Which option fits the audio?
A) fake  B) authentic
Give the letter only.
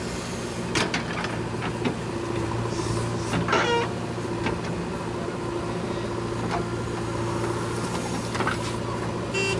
B